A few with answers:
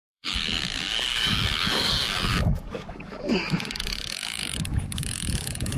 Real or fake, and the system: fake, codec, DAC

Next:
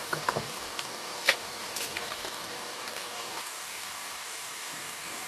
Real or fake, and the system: fake, codec, DAC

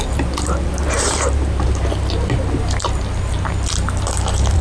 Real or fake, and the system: real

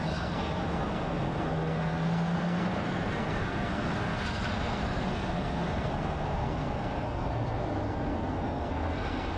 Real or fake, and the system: fake, codec, SNAC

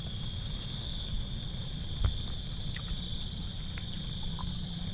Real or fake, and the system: real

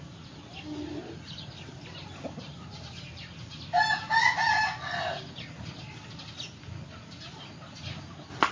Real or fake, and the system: real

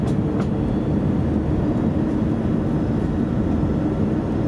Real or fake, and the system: real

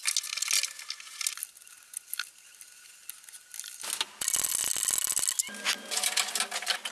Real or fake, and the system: real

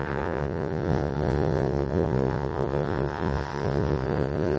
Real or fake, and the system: fake, vocoder, Vocos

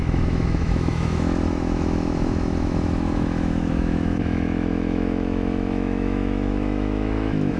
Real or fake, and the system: fake, autoencoder, DAC-VAE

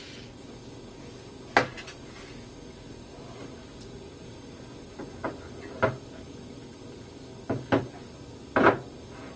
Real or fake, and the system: real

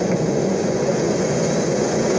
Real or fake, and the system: fake, vocoder, Vocos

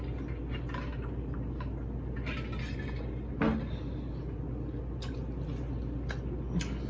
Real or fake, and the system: real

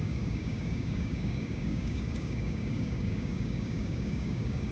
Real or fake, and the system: fake, codec, DAC